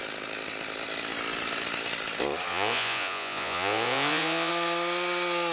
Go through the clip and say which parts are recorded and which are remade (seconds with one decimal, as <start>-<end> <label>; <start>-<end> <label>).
0.0-2.5 recorded; 2.5-4.5 remade; 4.5-5.5 recorded